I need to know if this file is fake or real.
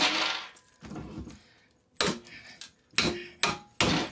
real